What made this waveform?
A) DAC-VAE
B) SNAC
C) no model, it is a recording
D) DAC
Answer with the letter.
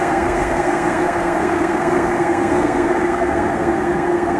B